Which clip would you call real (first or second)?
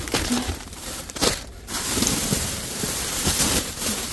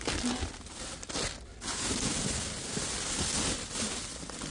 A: second